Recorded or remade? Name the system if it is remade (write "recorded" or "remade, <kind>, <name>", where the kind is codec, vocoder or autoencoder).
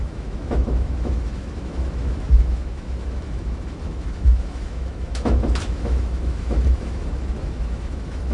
remade, autoencoder, DAC-VAE